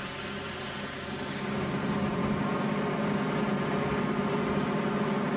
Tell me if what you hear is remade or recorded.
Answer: recorded